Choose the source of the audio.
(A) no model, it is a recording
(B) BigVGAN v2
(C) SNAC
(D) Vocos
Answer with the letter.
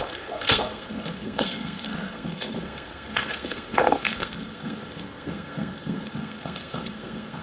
C